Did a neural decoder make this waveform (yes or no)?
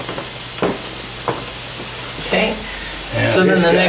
no